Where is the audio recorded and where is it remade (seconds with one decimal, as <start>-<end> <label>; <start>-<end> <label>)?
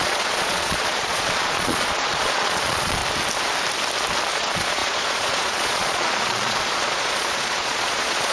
0.0-3.0 remade; 3.0-4.3 recorded; 4.3-8.3 remade